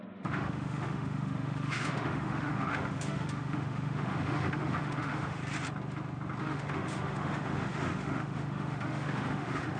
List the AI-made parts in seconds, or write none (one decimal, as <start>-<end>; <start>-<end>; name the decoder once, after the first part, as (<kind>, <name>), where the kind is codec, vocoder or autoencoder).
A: 0.0-5.4 (autoencoder, DAC-VAE); 6.4-9.8